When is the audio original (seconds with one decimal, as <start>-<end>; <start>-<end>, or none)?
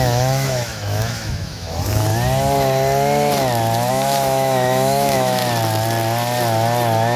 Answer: 2.1-3.9; 5.4-7.2